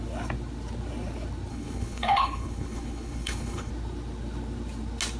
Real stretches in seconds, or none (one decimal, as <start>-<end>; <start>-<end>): 0.0-1.5; 3.7-5.2